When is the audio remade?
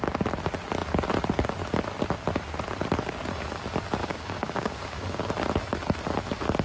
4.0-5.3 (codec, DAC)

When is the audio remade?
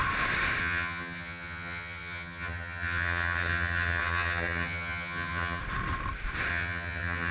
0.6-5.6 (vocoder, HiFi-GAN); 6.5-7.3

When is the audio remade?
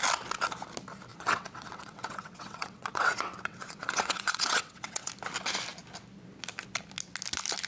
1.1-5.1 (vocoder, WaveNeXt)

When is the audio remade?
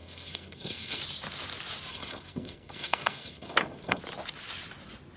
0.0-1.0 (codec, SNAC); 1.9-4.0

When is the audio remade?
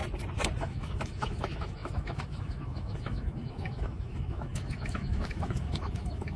0.6-6.4 (autoencoder, DAC-VAE)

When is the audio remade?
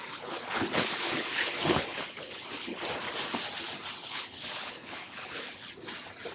0.0-2.8 (codec, HILCodec); 4.0-5.7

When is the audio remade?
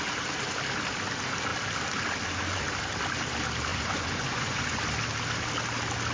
3.7-4.8 (vocoder, Vocos)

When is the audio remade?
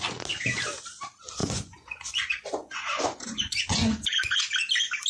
1.4-4.5 (vocoder, Vocos)